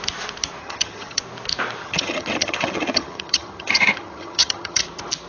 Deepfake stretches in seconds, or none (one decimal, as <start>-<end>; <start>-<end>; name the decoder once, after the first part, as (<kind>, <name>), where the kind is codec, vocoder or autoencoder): 0.6-1.2 (vocoder, HiFi-GAN); 1.8-4.8